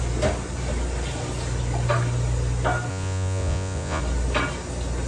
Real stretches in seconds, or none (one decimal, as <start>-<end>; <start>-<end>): 0.0-2.9; 4.0-5.1